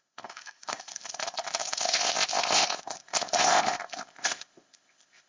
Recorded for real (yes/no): no